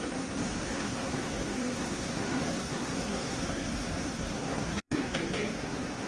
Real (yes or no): no